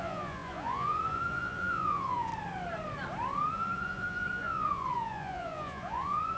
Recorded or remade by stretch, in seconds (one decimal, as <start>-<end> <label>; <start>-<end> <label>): 0.0-2.3 remade; 2.3-3.5 recorded; 3.5-6.4 remade